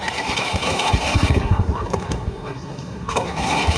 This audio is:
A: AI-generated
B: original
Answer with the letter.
A